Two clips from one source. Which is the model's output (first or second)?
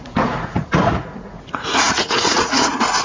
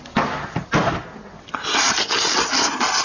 first